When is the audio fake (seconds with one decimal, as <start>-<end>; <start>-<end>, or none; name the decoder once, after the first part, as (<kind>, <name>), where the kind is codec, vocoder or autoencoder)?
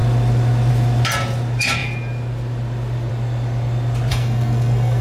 4.1-5.0 (codec, SNAC)